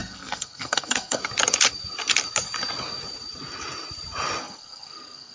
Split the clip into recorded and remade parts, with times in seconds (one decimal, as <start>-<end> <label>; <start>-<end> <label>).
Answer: 0.0-1.2 remade; 1.2-4.4 recorded; 4.4-5.3 remade